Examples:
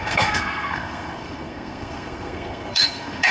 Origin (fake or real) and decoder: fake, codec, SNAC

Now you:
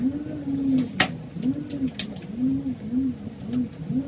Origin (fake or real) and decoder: real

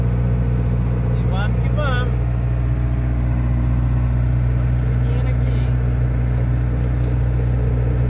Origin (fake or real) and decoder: real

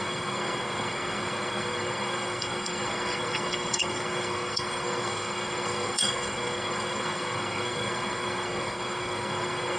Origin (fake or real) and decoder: fake, codec, SNAC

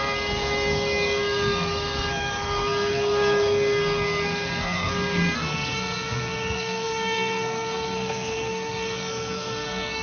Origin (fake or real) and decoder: fake, codec, SNAC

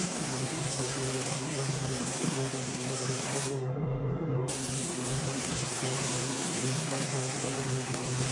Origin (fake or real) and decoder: fake, codec, SNAC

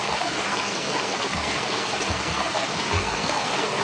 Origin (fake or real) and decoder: fake, codec, SNAC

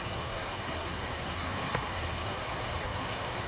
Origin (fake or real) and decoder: fake, codec, SNAC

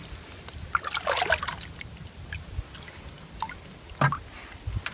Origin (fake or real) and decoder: real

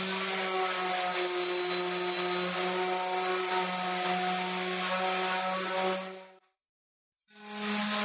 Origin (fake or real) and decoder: real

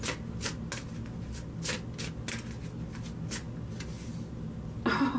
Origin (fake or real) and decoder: real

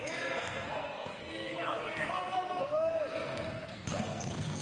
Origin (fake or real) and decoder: fake, codec, SNAC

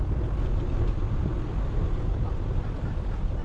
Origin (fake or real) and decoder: real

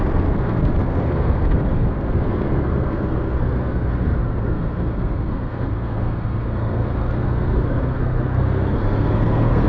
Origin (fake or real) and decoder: fake, codec, SNAC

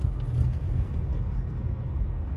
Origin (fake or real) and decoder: fake, codec, SNAC